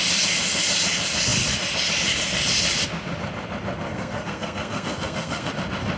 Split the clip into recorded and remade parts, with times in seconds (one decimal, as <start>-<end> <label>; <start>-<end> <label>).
0.0-3.9 recorded; 3.9-5.5 remade; 5.5-6.0 recorded